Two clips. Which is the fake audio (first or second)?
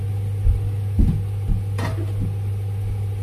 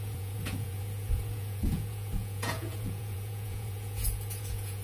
second